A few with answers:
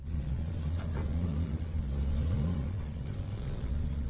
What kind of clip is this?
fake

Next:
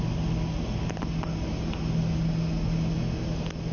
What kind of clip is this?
real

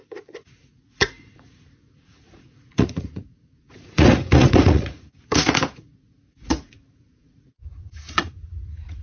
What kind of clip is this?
fake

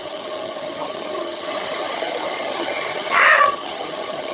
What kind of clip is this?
fake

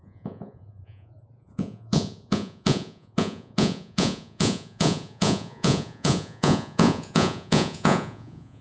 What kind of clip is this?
fake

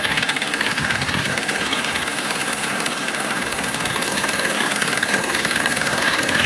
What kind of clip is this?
fake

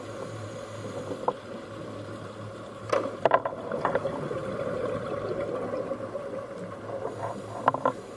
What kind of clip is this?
real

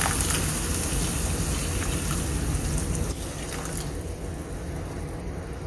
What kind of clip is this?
real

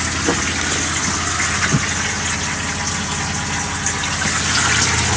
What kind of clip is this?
real